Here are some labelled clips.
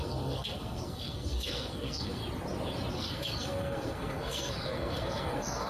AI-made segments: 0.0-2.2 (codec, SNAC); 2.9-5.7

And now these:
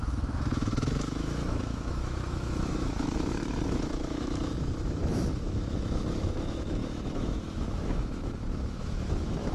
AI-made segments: 0.0-9.5 (autoencoder, DAC-VAE)